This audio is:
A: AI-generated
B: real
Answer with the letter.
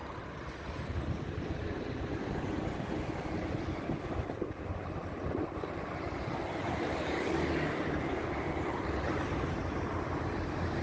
B